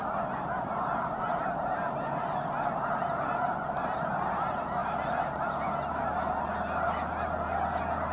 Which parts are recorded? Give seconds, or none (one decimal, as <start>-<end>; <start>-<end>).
0.0-8.1